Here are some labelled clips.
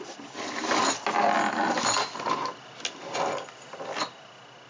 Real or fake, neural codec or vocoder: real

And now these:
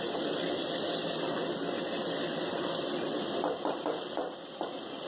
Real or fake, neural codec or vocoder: fake, vocoder, BigVGAN v2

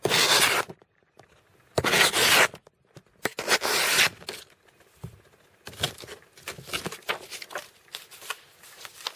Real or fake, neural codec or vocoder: real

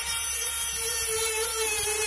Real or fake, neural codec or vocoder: fake, vocoder, BigVGAN v2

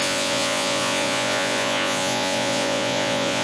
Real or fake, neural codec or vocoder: fake, vocoder, Vocos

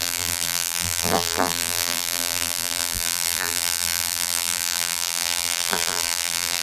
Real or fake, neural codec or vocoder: fake, vocoder, BigVGAN v2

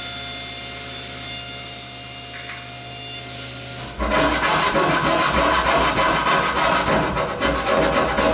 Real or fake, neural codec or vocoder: real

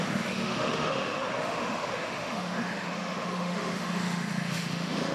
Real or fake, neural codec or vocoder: fake, autoencoder, DAC-VAE